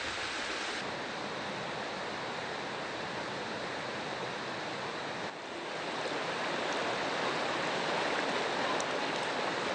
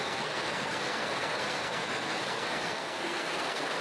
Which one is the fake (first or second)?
second